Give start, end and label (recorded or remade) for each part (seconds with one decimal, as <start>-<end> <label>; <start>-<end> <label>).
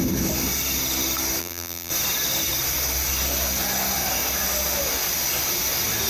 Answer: 0.0-1.4 recorded; 1.4-1.9 remade; 1.9-6.1 recorded